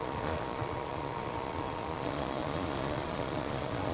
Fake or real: fake